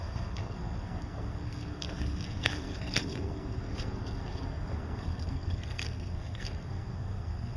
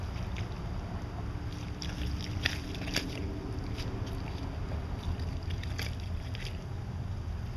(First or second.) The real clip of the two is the second